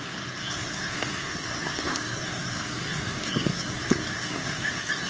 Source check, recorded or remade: remade